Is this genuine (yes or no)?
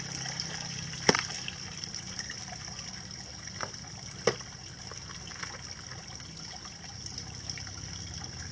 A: yes